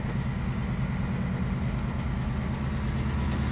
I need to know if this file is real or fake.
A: real